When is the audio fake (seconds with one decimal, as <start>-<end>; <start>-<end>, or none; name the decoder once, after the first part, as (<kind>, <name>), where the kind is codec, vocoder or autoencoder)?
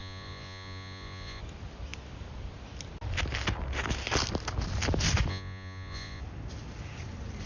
0.0-1.4 (vocoder, Vocos); 5.3-6.2